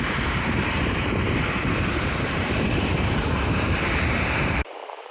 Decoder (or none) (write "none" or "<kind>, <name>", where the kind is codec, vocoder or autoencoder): vocoder, BigVGAN v2